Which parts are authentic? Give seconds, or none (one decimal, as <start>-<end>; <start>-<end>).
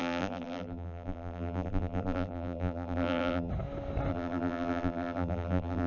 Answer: 3.5-4.1